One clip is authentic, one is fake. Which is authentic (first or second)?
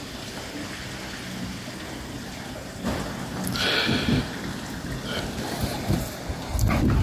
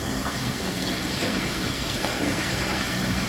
first